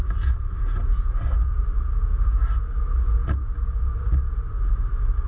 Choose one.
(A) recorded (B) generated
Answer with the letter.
A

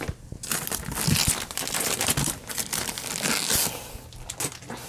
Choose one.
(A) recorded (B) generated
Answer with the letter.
A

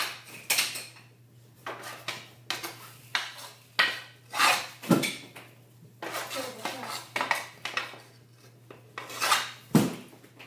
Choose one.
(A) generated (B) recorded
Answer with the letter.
B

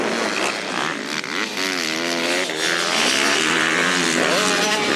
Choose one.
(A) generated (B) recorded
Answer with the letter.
B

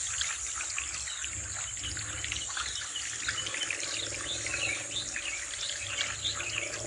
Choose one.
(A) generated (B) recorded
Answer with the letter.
B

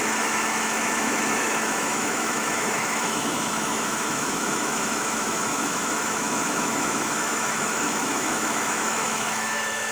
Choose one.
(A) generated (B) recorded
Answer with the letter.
A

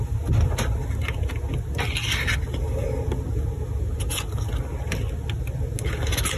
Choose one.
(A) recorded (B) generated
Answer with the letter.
A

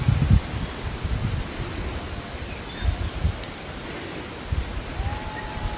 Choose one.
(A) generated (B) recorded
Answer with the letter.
B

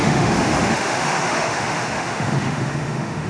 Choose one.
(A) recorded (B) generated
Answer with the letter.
B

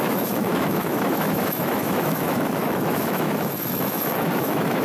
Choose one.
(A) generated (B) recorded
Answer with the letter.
A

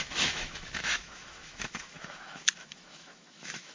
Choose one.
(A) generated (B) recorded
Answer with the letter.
A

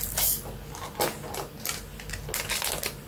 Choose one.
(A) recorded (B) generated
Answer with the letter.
A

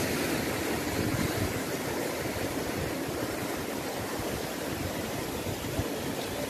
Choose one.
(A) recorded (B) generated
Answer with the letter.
A